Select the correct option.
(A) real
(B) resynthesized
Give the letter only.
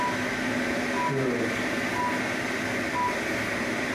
A